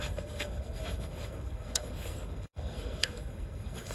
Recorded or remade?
remade